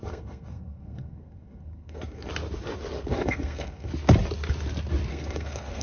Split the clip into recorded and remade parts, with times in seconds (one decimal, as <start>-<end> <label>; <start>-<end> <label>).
0.0-2.3 remade; 2.3-3.1 recorded; 3.1-3.9 remade; 3.9-5.1 recorded; 5.1-5.8 remade